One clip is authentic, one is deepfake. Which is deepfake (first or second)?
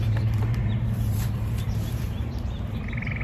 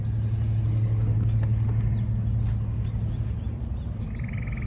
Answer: first